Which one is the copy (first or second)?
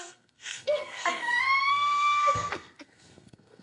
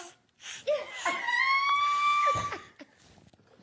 first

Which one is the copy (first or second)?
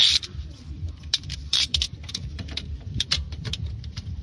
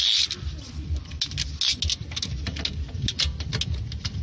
first